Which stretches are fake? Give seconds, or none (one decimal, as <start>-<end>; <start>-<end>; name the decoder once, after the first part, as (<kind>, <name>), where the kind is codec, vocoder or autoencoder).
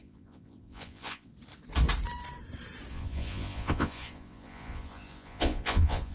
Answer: 0.0-1.3 (vocoder, Vocos); 2.9-6.1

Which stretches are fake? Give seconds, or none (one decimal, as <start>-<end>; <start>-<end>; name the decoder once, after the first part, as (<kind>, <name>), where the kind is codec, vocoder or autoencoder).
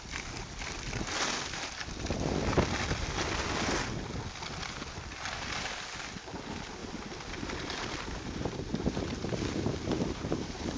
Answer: none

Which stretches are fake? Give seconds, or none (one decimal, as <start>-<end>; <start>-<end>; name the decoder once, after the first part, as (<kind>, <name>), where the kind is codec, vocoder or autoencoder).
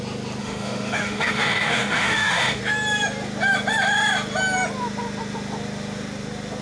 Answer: 0.4-2.6 (autoencoder, DAC-VAE)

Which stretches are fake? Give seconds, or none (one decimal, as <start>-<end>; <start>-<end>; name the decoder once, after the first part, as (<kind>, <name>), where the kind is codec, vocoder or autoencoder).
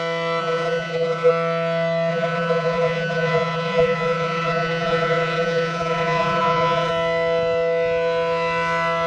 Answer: 0.4-1.3 (vocoder, Vocos); 2.1-6.9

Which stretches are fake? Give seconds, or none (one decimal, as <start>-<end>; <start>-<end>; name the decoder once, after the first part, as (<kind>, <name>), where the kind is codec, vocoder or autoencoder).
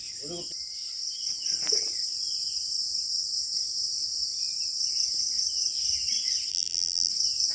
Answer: 6.5-7.1 (vocoder, BigVGAN v2)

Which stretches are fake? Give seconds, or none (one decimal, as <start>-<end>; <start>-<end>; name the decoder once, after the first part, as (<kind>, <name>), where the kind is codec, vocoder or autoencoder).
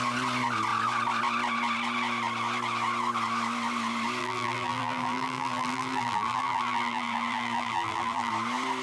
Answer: 4.2-8.3 (vocoder, BigVGAN v2)